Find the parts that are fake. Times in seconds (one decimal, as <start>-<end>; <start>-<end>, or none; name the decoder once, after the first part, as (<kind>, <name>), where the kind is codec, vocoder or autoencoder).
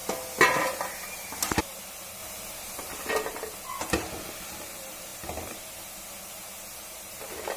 2.2-3.1 (vocoder, BigVGAN v2)